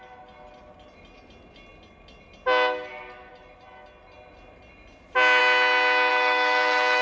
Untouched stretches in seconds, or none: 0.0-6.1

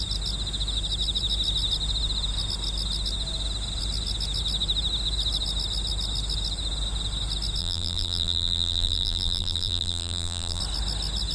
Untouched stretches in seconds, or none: 0.0-7.6; 10.6-11.3

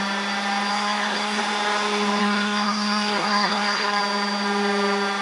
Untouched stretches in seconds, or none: 0.0-0.7; 1.4-2.2; 4.0-5.2

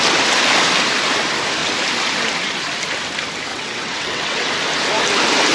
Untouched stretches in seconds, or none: 0.0-3.5; 4.5-5.5

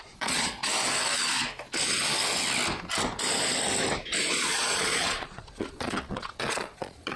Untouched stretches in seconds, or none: 0.6-4.3

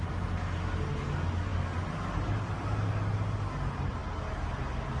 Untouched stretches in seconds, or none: 0.0-5.0

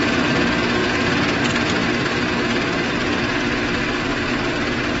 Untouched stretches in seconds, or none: 0.0-0.8; 1.4-5.0